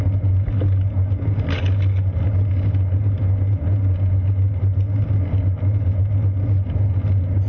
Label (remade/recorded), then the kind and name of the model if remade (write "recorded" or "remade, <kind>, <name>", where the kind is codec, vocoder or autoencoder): recorded